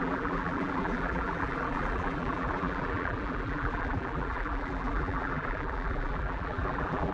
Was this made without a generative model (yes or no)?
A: no